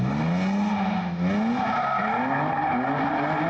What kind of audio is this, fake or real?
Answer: real